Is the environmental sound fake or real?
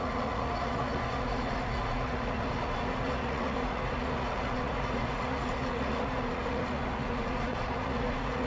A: fake